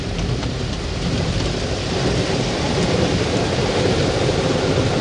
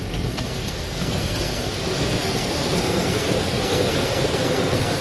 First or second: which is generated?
second